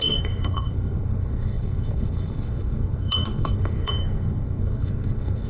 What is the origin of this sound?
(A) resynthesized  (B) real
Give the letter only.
A